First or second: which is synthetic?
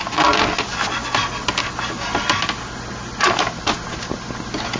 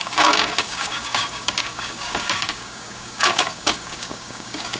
second